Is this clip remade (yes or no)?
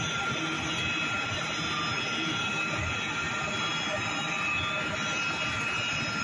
no